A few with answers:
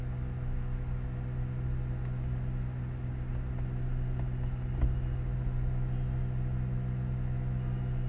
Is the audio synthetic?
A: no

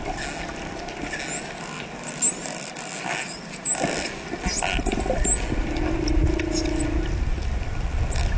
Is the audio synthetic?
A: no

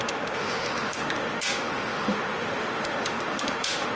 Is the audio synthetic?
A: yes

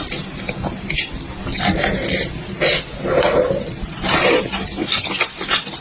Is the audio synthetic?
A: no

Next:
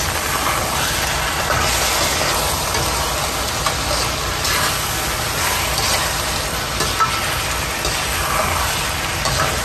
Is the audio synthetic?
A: no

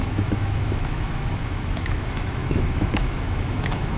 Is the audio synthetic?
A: yes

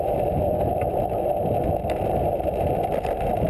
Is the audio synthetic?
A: no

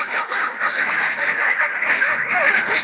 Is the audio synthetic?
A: yes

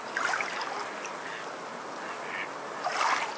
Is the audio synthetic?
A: no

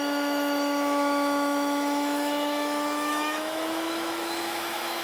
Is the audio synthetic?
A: yes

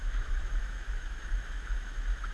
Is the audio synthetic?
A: yes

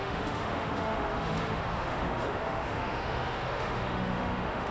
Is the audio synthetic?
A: yes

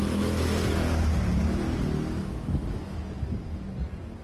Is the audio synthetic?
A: no